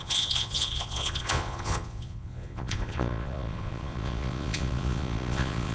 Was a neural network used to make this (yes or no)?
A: yes